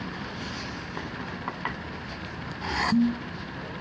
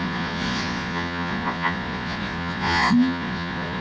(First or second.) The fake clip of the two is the second